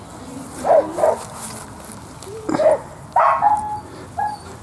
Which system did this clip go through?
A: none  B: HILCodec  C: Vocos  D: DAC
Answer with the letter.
A